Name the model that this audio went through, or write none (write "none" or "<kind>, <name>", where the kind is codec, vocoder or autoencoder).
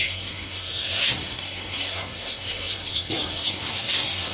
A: codec, SNAC